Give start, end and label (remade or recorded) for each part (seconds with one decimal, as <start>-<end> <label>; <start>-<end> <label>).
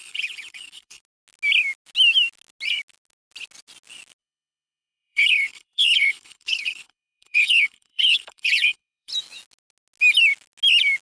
0.0-1.0 remade; 1.0-4.2 recorded; 4.2-9.1 remade; 9.1-11.0 recorded